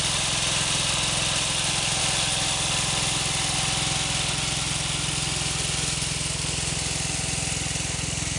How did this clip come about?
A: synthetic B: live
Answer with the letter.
B